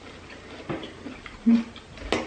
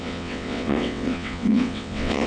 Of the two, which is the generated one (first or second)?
second